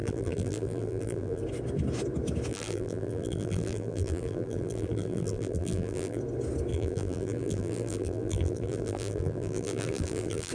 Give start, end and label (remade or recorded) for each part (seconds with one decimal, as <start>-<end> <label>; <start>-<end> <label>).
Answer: 0.0-1.4 remade; 1.4-2.5 recorded; 2.5-6.2 remade; 6.2-6.7 recorded; 6.7-10.5 remade

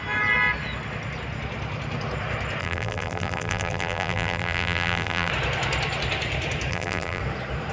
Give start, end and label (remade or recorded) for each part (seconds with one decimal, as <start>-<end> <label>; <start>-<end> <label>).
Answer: 0.0-2.6 recorded; 2.6-5.3 remade; 5.3-6.7 recorded; 6.7-7.2 remade; 7.2-7.7 recorded